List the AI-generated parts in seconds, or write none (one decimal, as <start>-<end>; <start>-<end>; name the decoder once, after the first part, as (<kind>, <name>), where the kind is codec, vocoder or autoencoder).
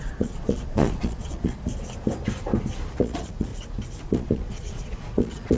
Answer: 0.0-1.7 (vocoder, Vocos); 3.0-3.5; 4.0-5.6